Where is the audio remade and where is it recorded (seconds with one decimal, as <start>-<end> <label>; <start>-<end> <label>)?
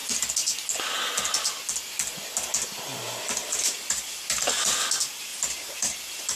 0.0-3.4 recorded; 3.4-4.4 remade; 4.4-5.3 recorded; 5.3-6.4 remade